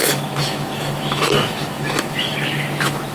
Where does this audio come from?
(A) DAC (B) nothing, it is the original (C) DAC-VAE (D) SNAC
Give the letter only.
C